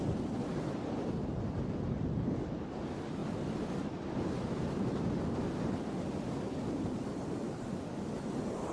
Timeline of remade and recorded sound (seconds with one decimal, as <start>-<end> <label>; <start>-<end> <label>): 0.0-8.7 remade